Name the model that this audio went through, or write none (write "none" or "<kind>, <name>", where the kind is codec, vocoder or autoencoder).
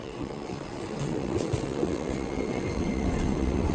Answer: vocoder, WaveNeXt